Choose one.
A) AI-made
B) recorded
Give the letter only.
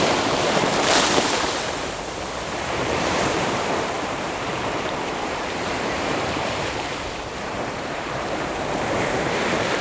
A